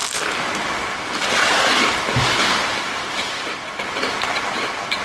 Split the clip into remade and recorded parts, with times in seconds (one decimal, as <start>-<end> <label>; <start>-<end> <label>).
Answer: 0.0-5.0 recorded